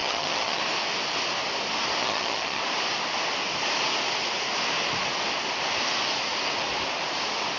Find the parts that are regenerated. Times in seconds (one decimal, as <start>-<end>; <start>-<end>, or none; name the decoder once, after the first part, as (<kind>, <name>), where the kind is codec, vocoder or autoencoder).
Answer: 0.0-0.6 (vocoder, HiFi-GAN); 2.0-2.6